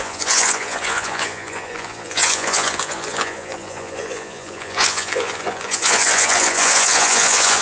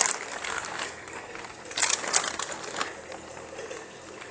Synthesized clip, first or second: first